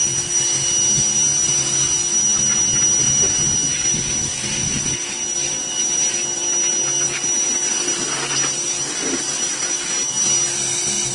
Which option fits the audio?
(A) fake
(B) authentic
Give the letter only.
B